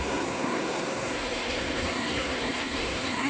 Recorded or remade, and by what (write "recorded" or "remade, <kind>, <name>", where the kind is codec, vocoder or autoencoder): remade, codec, SNAC